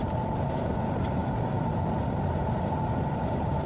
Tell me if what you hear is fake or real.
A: fake